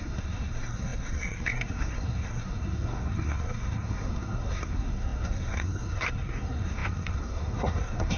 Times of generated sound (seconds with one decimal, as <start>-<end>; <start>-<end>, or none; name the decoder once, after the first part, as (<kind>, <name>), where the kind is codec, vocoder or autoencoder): 0.0-8.2 (codec, SNAC)